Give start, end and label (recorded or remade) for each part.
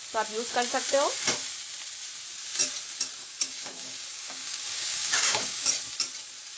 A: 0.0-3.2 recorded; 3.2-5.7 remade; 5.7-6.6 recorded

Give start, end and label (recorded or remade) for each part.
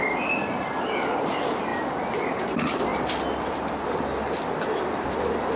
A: 0.0-5.6 recorded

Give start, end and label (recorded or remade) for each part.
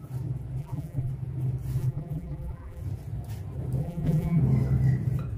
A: 0.0-0.6 recorded; 0.6-1.1 remade; 1.1-1.8 recorded; 1.8-2.8 remade; 2.8-3.8 recorded; 3.8-4.4 remade; 4.4-5.4 recorded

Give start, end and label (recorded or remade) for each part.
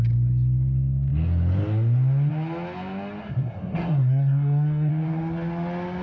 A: 0.0-3.2 recorded; 3.2-4.9 remade; 4.9-6.0 recorded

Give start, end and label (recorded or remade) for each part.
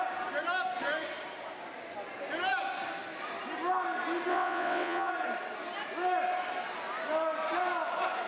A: 0.0-4.3 recorded; 4.3-5.1 remade; 5.1-8.3 recorded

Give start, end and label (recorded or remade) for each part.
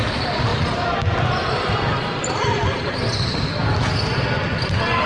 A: 0.0-0.5 recorded; 0.5-3.0 remade; 3.0-5.1 recorded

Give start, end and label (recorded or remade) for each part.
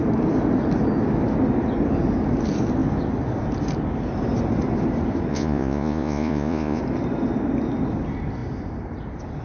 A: 0.0-5.3 recorded; 5.3-6.8 remade; 6.8-9.4 recorded